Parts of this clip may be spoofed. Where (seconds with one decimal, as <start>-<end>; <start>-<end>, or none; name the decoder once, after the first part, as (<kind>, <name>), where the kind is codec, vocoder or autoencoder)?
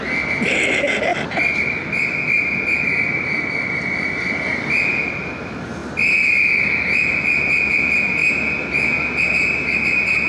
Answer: none